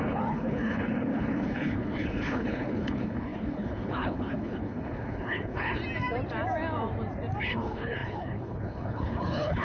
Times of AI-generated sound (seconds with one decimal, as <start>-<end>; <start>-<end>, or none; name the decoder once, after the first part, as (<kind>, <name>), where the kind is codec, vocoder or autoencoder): 0.0-5.8 (codec, HILCodec); 7.4-9.6